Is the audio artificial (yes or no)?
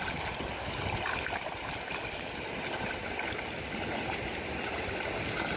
no